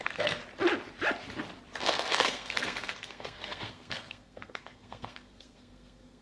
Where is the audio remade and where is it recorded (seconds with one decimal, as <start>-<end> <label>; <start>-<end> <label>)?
0.0-0.4 remade; 0.4-1.8 recorded; 1.8-6.2 remade